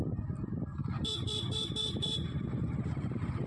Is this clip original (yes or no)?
no